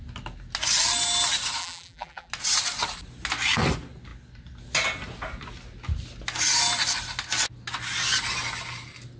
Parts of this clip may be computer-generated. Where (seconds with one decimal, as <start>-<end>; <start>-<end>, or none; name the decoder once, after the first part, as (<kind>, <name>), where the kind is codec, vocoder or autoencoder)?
1.6-2.3 (vocoder, BigVGAN v2)